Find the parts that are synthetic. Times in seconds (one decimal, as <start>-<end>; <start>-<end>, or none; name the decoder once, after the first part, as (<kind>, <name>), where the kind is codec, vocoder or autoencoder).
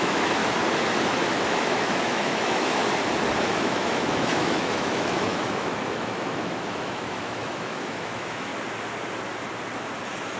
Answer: 0.0-0.4 (autoencoder, DAC-VAE); 1.2-2.8; 3.5-8.5